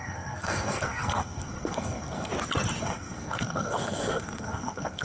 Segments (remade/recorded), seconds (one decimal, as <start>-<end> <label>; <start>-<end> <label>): 0.0-2.3 remade; 2.3-2.8 recorded; 2.8-5.0 remade